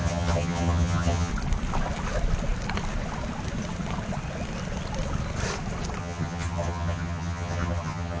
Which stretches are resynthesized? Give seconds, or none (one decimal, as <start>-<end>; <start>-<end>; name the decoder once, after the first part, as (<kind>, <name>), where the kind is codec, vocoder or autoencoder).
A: 0.0-1.3 (vocoder, HiFi-GAN); 6.0-8.2